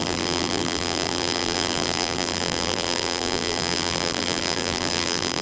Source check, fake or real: fake